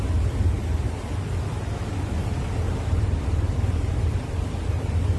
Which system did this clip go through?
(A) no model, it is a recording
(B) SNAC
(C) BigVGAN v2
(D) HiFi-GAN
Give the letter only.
C